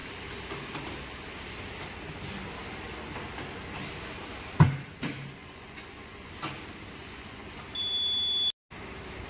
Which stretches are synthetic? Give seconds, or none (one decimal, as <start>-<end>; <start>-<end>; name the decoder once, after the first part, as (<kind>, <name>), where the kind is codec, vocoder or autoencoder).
5.4-6.3 (vocoder, Vocos); 7.0-7.6